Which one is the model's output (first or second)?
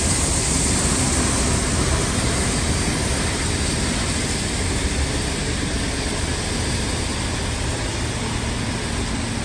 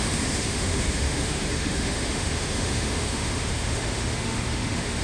second